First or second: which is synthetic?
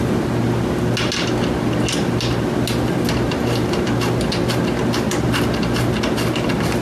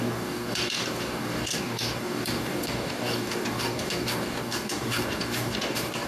second